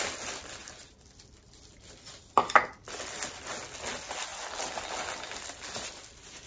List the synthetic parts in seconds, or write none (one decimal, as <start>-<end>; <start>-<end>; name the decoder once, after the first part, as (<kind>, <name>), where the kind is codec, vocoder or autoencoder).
0.6-1.7 (vocoder, BigVGAN v2)